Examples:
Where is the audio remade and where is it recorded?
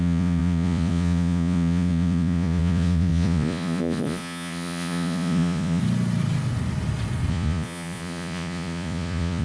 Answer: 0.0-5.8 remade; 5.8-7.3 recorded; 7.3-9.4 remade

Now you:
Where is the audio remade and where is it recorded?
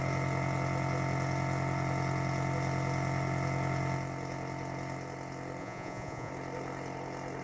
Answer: 0.0-5.6 recorded; 5.6-6.3 remade; 6.3-7.4 recorded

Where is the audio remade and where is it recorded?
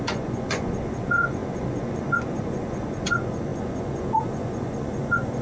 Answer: 0.0-5.4 remade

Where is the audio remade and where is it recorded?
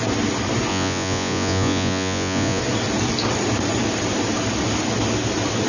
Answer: 0.0-0.7 recorded; 0.7-2.6 remade; 2.6-5.7 recorded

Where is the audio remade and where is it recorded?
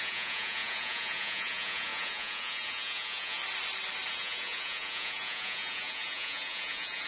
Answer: 0.0-3.4 remade; 3.4-4.1 recorded; 4.1-7.1 remade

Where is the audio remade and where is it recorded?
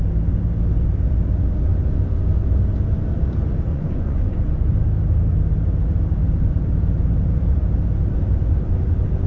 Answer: 0.0-3.7 recorded; 3.7-4.7 remade; 4.7-9.3 recorded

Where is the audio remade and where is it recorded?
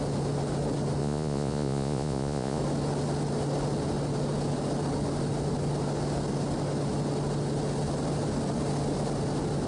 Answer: 0.0-1.0 recorded; 1.0-2.6 remade; 2.6-9.7 recorded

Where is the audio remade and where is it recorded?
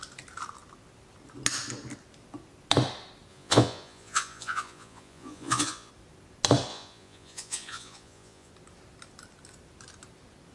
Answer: 0.0-3.3 recorded; 3.3-5.9 remade; 5.9-6.7 recorded; 6.7-8.5 remade; 8.5-10.5 recorded